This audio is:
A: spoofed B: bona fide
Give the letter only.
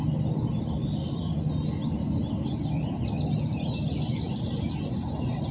B